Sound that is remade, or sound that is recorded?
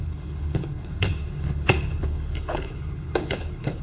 remade